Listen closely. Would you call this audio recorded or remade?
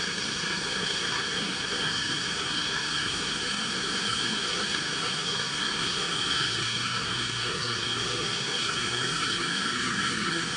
remade